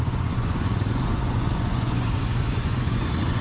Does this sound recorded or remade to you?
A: remade